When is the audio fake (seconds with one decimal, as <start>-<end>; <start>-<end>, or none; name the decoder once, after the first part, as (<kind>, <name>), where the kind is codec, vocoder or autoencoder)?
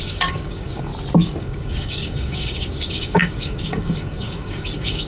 0.0-0.9 (codec, DAC); 1.4-5.1